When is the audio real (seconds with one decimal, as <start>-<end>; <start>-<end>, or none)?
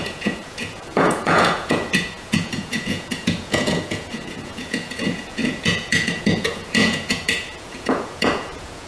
none